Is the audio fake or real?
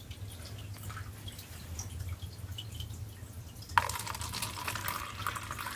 real